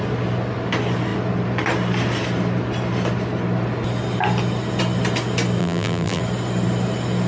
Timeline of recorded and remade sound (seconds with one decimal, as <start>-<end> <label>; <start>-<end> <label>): 0.0-5.6 recorded; 5.6-6.2 remade; 6.2-7.3 recorded

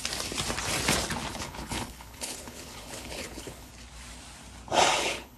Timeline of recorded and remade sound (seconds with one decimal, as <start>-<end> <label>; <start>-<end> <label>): 0.0-1.3 recorded; 1.3-3.7 remade; 3.7-4.9 recorded; 4.9-5.4 remade